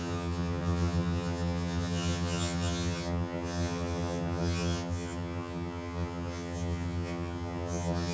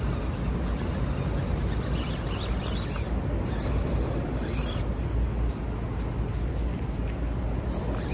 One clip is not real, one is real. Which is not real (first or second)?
first